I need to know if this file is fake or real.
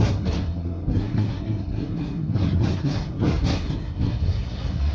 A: fake